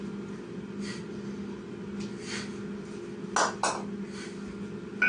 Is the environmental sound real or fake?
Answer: real